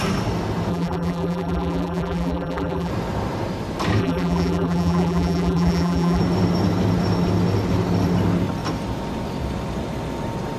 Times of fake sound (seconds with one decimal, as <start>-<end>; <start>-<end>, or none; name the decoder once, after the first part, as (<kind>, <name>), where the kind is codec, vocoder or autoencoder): 0.7-2.9 (vocoder, BigVGAN v2); 4.0-6.2